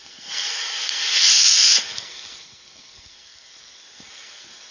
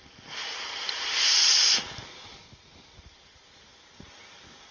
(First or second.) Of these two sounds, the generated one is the first